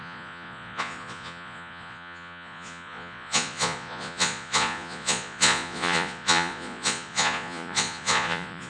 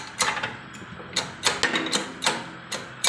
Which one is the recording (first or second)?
second